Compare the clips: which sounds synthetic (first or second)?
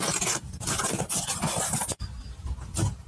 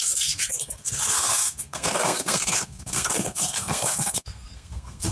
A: second